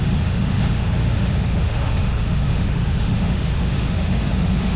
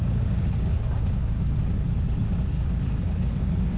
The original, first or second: second